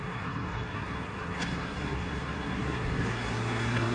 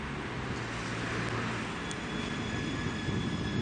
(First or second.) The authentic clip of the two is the second